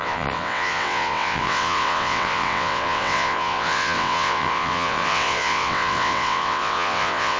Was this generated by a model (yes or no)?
yes